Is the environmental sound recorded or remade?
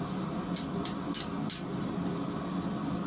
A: recorded